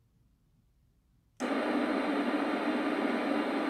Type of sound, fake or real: real